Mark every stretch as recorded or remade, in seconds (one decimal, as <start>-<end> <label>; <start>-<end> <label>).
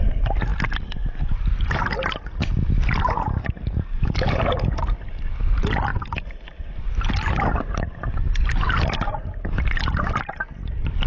0.0-11.1 recorded